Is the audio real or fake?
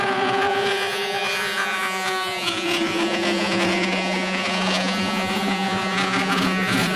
fake